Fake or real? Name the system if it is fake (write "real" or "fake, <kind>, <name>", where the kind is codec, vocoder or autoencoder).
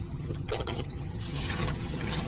fake, vocoder, HiFi-GAN